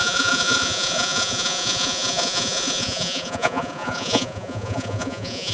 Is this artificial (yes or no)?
yes